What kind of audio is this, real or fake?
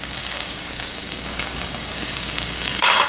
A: fake